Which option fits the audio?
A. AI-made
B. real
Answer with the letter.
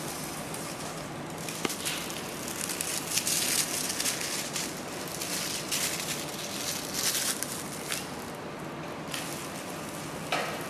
B